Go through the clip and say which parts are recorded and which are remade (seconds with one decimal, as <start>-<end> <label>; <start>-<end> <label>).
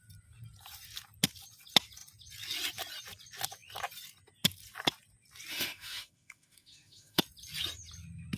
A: 0.0-5.5 recorded; 5.5-7.2 remade; 7.2-8.4 recorded